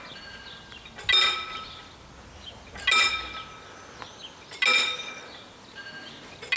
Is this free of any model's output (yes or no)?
yes